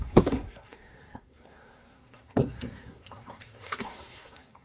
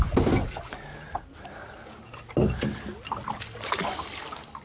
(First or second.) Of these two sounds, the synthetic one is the first